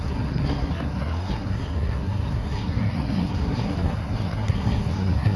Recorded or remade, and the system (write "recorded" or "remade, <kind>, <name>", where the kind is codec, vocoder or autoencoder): remade, codec, SNAC